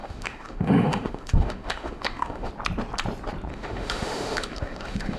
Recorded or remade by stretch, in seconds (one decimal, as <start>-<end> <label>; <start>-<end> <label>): 0.0-2.5 remade; 2.5-3.5 recorded; 3.5-5.2 remade